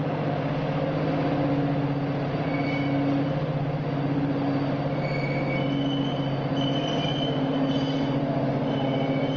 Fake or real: real